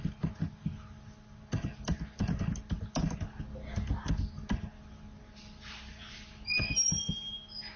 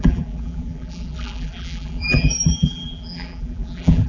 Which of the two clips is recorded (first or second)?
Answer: first